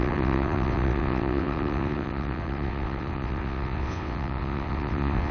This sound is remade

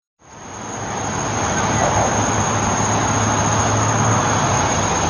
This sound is recorded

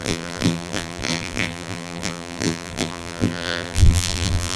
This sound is remade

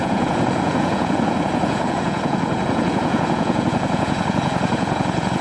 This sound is remade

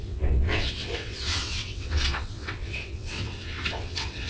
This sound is remade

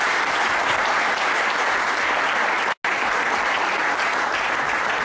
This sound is recorded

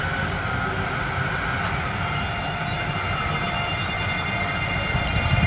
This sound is recorded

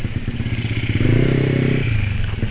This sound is recorded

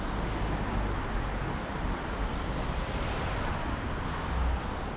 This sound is recorded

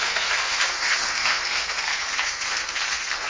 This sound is remade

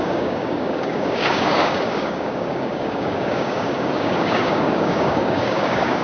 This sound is remade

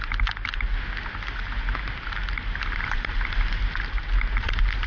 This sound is recorded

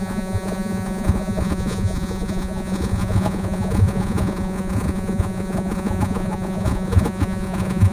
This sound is remade